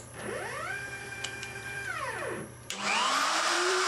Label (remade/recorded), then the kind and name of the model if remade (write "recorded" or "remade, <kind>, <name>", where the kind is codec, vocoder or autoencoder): remade, vocoder, BigVGAN v2